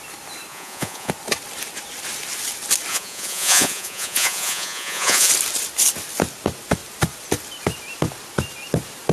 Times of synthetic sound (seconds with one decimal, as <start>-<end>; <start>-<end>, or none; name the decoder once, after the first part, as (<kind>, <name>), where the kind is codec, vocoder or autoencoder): 0.5-1.1 (vocoder, Vocos); 2.9-5.3